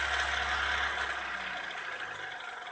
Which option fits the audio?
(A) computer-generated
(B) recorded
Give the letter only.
B